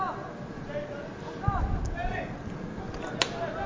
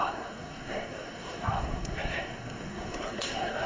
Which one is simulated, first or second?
second